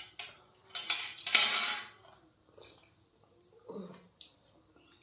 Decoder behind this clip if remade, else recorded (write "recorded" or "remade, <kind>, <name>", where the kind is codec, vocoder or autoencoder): recorded